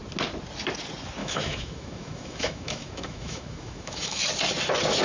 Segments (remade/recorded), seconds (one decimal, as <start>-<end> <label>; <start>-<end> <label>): 0.0-1.2 recorded; 1.2-4.2 remade; 4.2-5.0 recorded